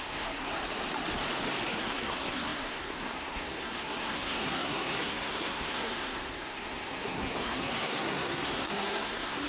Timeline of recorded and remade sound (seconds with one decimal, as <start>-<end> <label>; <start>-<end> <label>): 0.0-0.6 remade; 0.6-1.8 recorded; 1.8-9.5 remade